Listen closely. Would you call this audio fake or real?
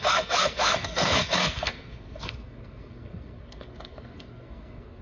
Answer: fake